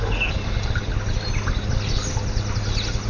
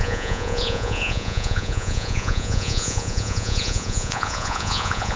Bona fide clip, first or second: first